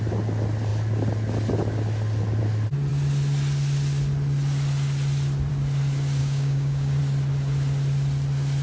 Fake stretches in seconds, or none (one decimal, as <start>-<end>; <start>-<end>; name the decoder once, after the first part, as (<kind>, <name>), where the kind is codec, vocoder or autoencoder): 6.2-7.0 (codec, DAC)